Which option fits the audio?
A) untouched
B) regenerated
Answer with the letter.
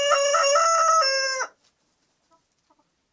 A